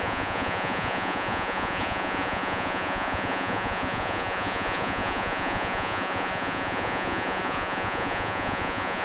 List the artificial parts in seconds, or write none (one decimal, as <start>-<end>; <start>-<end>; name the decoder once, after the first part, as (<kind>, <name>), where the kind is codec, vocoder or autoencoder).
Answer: 0.0-9.0 (vocoder, Vocos)